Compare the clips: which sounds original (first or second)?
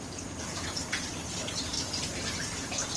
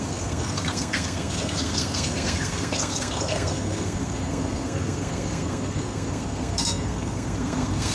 first